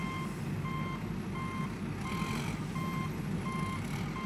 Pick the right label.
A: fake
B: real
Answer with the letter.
B